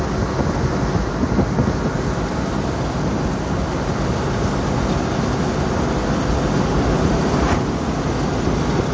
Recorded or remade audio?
recorded